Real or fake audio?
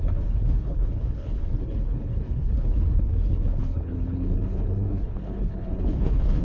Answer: fake